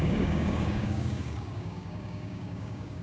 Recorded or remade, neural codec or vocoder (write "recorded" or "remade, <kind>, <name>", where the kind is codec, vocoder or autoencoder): remade, codec, DAC